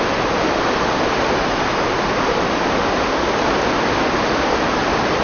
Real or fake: real